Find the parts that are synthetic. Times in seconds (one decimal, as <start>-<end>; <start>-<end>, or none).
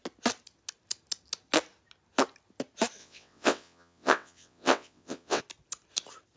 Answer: 3.0-5.4